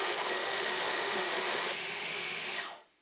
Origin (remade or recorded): remade